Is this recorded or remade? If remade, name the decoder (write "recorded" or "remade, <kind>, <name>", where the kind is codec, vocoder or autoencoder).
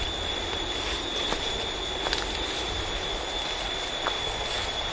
recorded